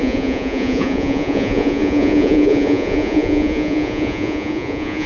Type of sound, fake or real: fake